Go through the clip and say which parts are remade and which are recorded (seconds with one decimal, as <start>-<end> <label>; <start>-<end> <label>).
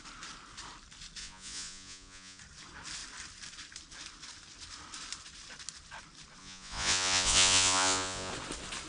0.0-1.2 recorded; 1.2-2.4 remade; 2.4-6.4 recorded; 6.4-8.3 remade; 8.3-8.9 recorded